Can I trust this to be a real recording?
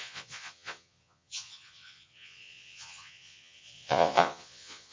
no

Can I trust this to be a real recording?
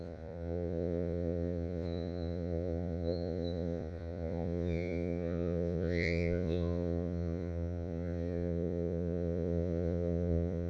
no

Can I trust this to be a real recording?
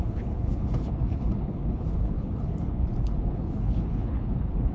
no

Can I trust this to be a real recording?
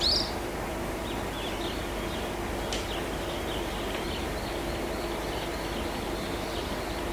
yes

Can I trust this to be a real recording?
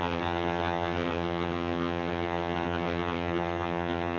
no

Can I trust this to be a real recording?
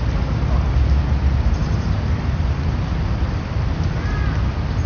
yes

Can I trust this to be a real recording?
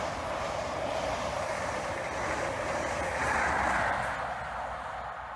yes